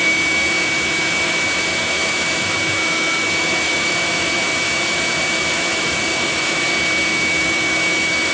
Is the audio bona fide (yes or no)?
no